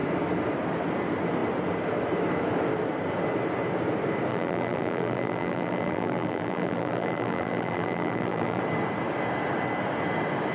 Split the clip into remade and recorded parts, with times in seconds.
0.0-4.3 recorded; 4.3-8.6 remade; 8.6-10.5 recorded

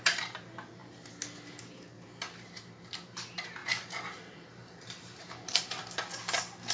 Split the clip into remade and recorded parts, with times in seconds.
0.0-3.6 recorded; 3.6-5.6 remade; 5.6-6.7 recorded

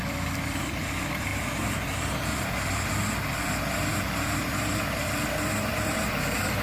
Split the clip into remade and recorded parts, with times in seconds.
0.0-1.3 recorded; 1.3-2.9 remade; 2.9-3.9 recorded; 3.9-4.8 remade; 4.8-5.7 recorded; 5.7-6.6 remade

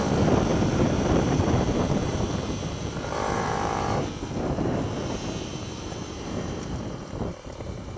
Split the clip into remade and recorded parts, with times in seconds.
0.0-0.5 recorded; 0.5-4.1 remade; 4.1-5.5 recorded; 5.5-8.0 remade

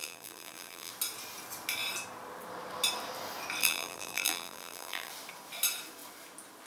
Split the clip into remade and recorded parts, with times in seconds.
0.0-0.9 remade; 0.9-3.6 recorded; 3.6-5.1 remade; 5.1-6.7 recorded